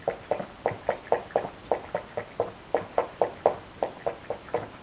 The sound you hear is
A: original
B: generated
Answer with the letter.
A